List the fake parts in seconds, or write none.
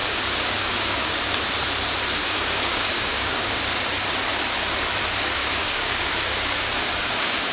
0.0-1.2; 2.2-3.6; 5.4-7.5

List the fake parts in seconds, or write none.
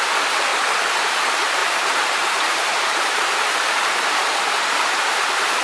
0.0-0.5; 1.0-5.6